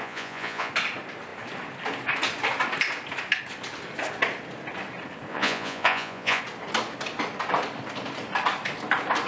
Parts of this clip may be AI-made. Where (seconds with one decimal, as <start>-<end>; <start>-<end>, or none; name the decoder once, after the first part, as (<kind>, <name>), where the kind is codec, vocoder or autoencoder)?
0.0-0.7 (vocoder, Vocos); 5.3-6.4